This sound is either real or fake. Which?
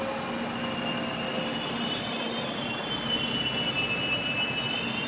real